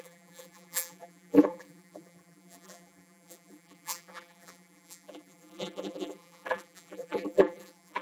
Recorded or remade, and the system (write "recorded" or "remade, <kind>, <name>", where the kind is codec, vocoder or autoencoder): remade, vocoder, BigVGAN v2